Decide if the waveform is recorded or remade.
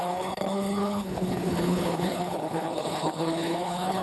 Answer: remade